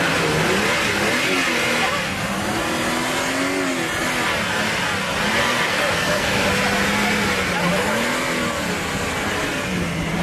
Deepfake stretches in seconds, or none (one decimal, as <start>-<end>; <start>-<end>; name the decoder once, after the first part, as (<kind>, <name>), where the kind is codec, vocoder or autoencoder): 5.4-6.5 (codec, SNAC)